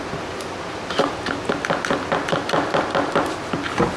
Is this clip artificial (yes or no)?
no